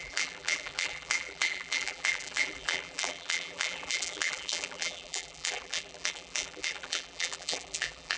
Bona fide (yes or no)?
no